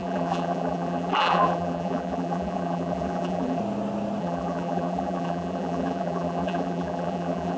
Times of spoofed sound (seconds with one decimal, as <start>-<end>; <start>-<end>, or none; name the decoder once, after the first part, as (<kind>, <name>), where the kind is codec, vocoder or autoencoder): 0.0-3.6 (vocoder, BigVGAN v2); 4.2-7.6